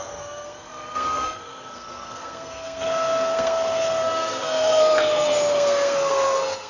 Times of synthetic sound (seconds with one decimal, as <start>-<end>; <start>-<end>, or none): 0.0-6.7